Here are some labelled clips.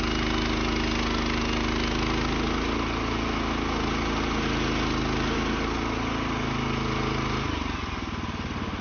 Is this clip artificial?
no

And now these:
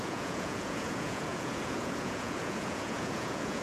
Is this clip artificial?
yes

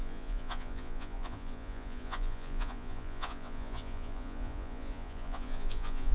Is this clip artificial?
yes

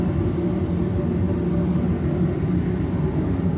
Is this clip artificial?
no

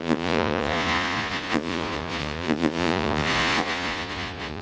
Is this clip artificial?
yes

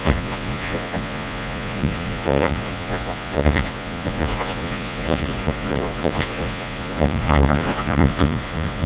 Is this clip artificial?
yes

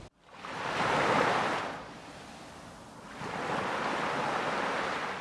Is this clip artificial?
no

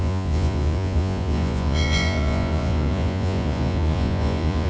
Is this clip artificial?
yes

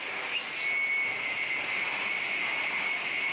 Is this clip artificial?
no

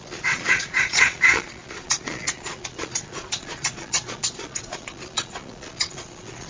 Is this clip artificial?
yes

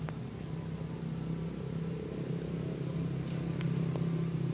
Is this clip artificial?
no